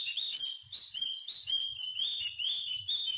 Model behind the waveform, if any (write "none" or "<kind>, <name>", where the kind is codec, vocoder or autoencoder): none